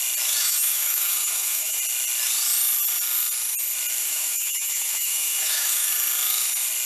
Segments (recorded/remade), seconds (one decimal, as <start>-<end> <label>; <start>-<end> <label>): 0.0-0.4 recorded; 0.4-1.8 remade; 1.8-4.0 recorded; 4.0-5.9 remade; 5.9-6.9 recorded